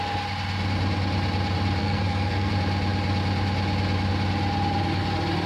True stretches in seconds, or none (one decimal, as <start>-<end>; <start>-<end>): 0.0-1.8; 2.5-5.5